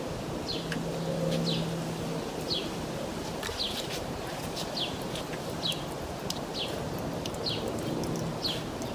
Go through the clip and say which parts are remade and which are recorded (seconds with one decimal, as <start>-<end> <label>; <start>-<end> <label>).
0.0-8.9 recorded